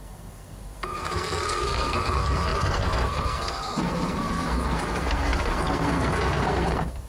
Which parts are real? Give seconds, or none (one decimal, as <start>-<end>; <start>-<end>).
none